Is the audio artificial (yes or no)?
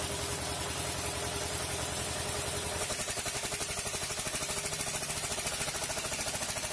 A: no